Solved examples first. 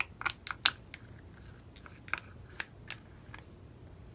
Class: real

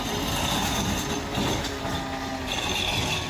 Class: real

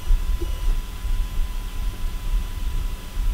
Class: fake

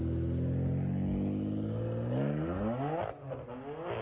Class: real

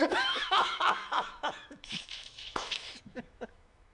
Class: fake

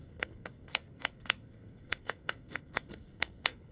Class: fake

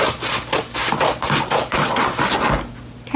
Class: real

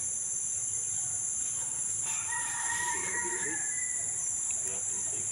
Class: fake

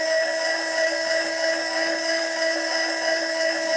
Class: fake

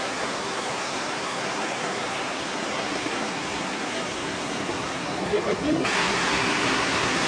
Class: fake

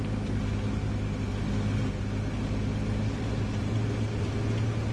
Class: real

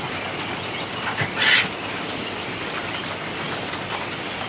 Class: real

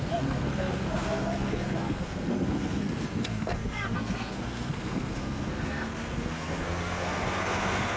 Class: fake